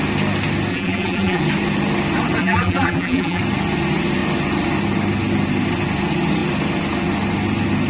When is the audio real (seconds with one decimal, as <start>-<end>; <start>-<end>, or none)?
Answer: 0.0-0.7; 1.4-2.4; 3.4-7.9